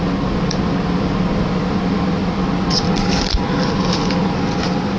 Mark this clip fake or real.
real